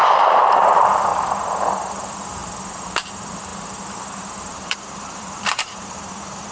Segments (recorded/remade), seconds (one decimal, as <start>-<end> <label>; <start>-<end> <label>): 0.0-1.1 remade; 1.1-1.9 recorded; 1.9-6.5 remade